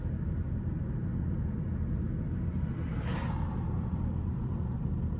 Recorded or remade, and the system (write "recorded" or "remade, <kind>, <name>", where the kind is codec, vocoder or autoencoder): recorded